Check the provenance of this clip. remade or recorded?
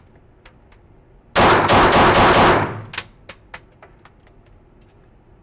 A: recorded